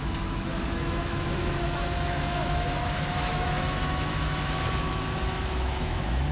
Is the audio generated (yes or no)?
yes